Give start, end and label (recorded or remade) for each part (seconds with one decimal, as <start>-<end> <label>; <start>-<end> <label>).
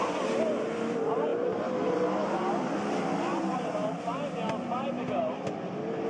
0.0-1.3 recorded; 1.3-2.7 remade; 2.7-3.3 recorded; 3.3-3.9 remade; 3.9-6.1 recorded